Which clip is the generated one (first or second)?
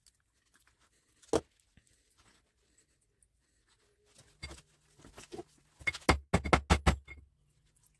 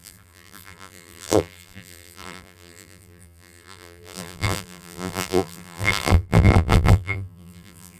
second